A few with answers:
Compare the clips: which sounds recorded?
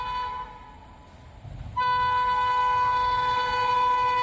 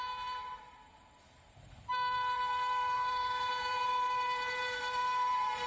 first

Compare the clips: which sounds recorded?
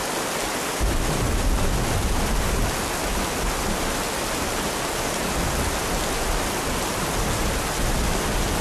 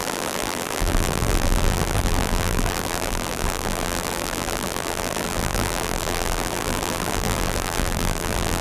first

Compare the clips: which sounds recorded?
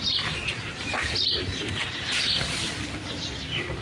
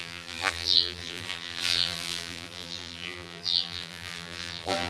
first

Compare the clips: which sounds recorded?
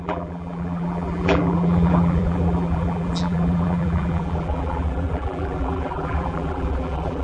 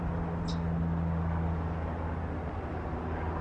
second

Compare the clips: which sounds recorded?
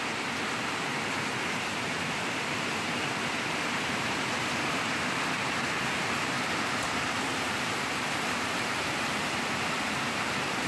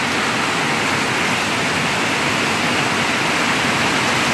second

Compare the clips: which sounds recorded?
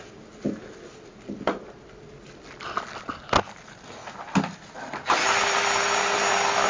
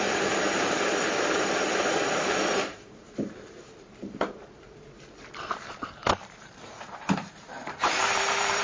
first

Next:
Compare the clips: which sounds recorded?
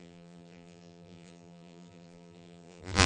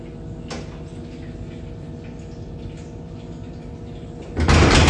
second